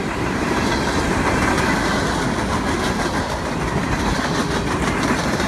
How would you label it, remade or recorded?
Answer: recorded